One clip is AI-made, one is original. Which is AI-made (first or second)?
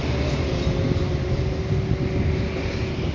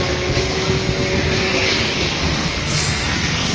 second